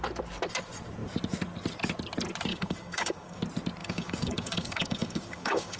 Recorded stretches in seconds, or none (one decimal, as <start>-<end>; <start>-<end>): 0.0-2.5; 3.4-3.8